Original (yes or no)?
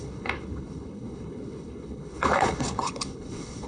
no